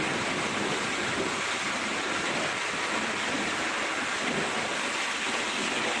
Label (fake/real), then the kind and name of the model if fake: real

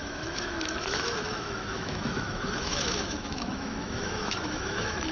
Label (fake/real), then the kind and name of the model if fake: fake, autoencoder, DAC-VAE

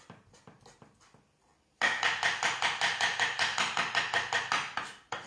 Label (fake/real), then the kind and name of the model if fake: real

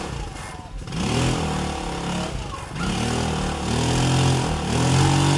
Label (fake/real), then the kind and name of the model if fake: real